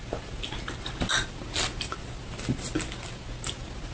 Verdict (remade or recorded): recorded